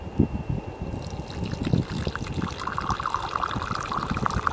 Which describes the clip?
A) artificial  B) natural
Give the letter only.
B